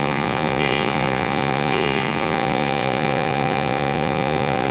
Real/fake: fake